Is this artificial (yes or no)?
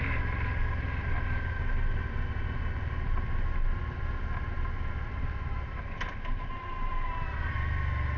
no